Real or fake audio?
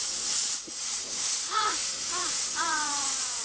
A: fake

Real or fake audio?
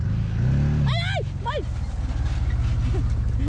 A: real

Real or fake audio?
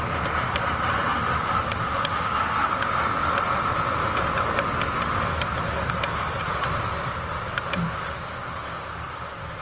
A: real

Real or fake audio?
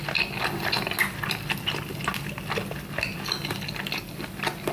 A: real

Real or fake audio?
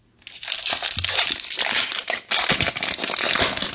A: real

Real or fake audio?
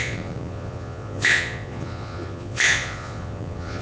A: fake